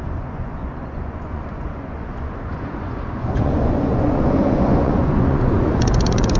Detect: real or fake fake